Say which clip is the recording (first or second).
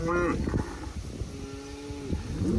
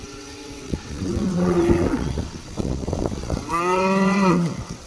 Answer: first